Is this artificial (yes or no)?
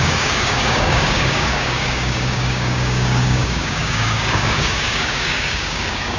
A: yes